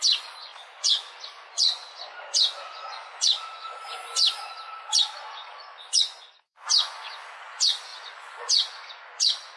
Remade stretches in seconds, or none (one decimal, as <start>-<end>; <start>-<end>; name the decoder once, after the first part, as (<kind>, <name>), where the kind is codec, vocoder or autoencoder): 0.0-9.6 (vocoder, Vocos)